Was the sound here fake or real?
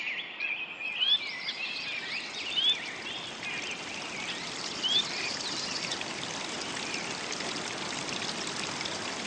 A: real